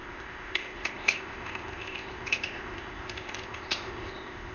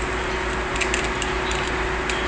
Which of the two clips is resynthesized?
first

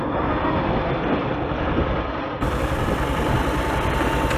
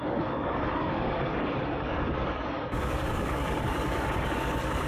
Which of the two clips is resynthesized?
second